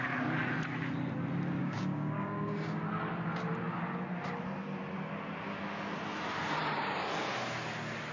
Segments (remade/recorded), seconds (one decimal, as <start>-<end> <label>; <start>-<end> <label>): 0.0-1.6 recorded; 1.6-2.8 remade; 2.8-6.6 recorded; 6.6-7.1 remade; 7.1-8.1 recorded